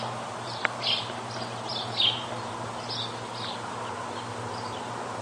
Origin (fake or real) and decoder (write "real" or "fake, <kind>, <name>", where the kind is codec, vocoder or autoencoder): fake, vocoder, BigVGAN v2